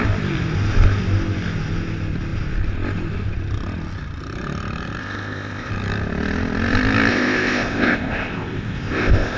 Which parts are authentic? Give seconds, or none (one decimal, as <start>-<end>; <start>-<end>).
0.0-5.0; 5.7-7.1